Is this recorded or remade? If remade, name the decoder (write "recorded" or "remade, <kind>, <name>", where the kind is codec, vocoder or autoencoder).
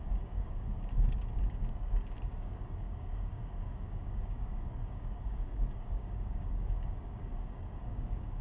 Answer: remade, codec, DAC